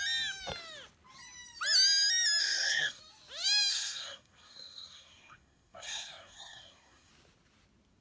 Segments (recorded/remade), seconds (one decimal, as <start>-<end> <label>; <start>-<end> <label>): 0.0-2.4 recorded; 2.4-3.0 remade; 3.0-3.7 recorded; 3.7-7.1 remade; 7.1-8.0 recorded